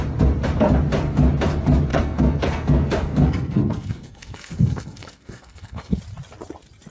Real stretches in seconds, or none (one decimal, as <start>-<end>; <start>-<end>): 0.0-1.9; 6.0-6.9

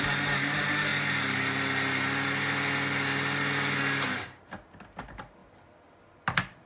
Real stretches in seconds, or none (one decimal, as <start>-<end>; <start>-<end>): 0.0-6.7